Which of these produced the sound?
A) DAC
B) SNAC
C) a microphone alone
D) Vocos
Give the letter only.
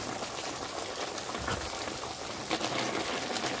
C